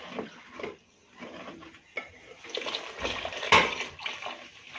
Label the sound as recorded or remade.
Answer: recorded